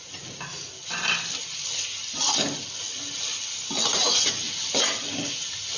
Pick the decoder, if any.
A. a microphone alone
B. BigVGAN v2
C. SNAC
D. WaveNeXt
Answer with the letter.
A